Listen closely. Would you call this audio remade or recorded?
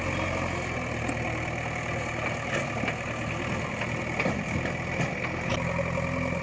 recorded